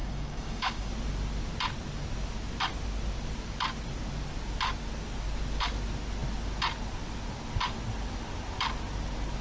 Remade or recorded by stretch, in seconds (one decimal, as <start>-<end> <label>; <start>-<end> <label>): 0.0-0.9 remade; 0.9-9.4 recorded